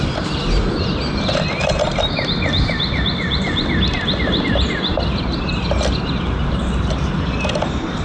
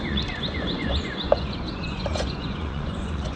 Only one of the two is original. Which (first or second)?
first